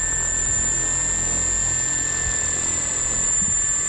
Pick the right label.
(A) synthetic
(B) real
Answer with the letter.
B